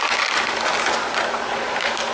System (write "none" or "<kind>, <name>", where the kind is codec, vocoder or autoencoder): none